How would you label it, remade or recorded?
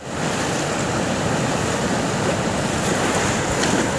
remade